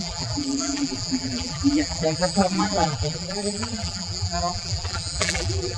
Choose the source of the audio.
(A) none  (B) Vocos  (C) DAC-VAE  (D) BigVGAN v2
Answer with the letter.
D